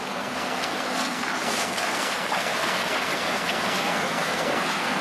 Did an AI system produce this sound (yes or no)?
yes